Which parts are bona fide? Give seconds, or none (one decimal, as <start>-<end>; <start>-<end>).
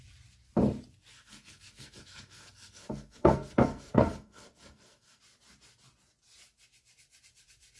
0.0-1.1; 5.2-7.8